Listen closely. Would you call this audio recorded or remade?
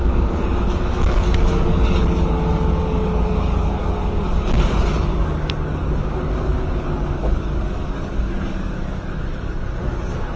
remade